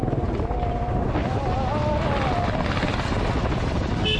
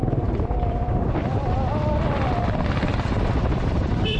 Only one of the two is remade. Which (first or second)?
second